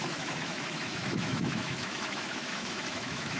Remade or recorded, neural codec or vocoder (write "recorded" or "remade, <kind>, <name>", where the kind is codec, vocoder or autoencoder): remade, autoencoder, DAC-VAE